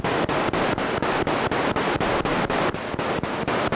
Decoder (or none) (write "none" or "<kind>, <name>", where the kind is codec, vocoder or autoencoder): none